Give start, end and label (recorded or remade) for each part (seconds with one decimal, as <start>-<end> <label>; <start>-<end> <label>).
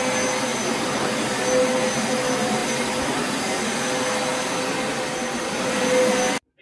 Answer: 0.0-0.5 recorded; 0.5-1.3 remade; 1.3-2.6 recorded; 2.6-3.6 remade; 3.6-6.6 recorded